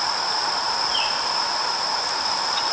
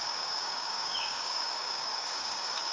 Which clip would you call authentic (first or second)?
first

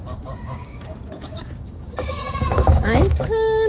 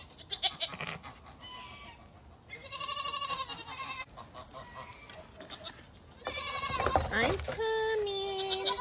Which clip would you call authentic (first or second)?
second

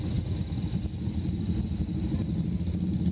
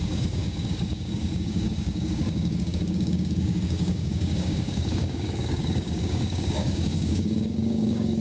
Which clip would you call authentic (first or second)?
first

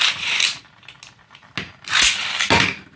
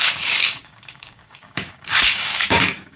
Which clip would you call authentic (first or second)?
first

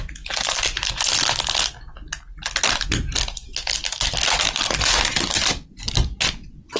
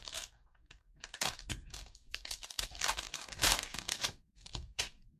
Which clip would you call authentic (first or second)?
first